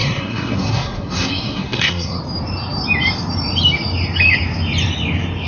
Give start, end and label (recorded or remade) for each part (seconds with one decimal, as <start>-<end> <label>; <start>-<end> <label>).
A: 0.0-2.2 remade; 2.2-5.5 recorded